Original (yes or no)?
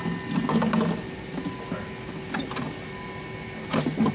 yes